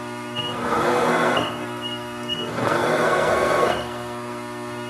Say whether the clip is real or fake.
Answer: fake